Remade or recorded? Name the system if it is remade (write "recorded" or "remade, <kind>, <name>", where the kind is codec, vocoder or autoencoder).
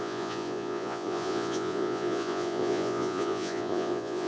remade, vocoder, Vocos